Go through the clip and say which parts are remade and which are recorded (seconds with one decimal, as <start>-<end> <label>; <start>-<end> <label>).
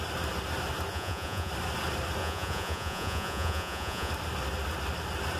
0.0-0.9 recorded; 0.9-1.5 remade; 1.5-2.2 recorded; 2.2-4.1 remade; 4.1-5.4 recorded